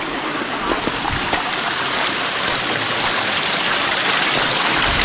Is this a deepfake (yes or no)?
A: no